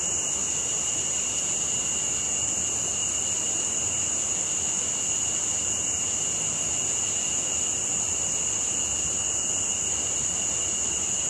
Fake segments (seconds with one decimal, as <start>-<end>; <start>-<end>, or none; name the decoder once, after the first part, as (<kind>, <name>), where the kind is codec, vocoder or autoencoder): 0.4-1.3 (vocoder, BigVGAN v2)